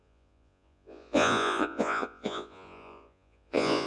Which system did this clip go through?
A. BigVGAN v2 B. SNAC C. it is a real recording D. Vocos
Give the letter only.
D